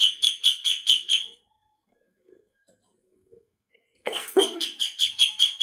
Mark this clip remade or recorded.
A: remade